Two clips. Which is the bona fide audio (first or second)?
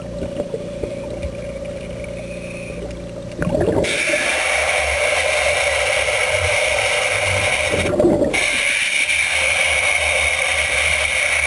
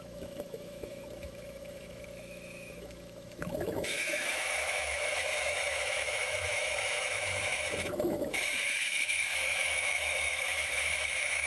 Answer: first